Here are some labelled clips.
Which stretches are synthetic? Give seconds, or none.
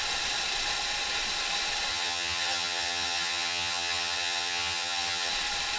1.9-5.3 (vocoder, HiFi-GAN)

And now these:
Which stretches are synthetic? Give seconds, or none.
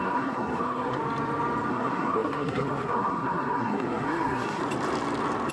0.0-1.0 (codec, SNAC); 1.7-4.6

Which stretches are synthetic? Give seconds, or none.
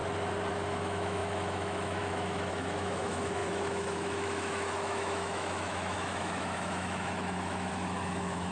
0.5-8.5 (autoencoder, DAC-VAE)